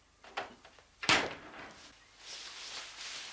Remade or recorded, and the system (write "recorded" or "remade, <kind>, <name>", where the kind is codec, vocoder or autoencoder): recorded